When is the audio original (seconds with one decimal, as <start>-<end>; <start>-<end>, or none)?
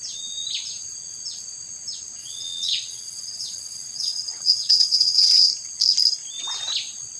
0.0-2.2; 5.5-7.2